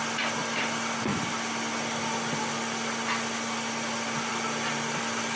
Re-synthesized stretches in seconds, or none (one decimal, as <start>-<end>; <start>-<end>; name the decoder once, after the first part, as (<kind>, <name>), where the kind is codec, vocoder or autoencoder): none